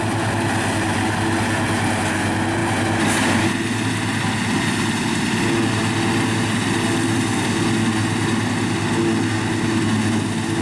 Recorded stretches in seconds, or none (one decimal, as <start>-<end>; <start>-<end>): 0.0-10.6